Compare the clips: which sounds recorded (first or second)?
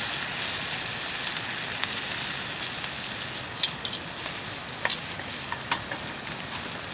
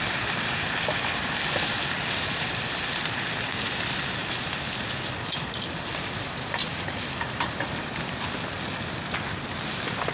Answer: first